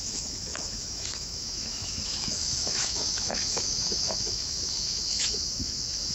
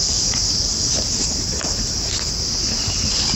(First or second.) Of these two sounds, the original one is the second